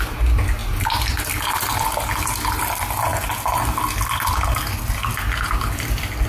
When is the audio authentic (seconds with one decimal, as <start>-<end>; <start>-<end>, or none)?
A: 0.0-6.3